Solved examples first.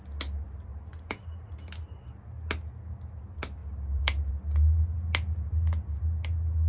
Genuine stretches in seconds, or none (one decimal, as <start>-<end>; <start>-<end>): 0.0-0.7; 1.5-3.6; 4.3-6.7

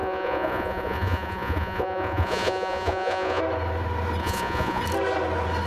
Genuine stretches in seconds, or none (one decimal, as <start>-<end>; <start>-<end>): 3.4-4.2; 4.8-5.7

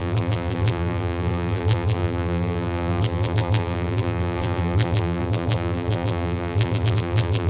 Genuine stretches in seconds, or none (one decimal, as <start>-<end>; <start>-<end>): none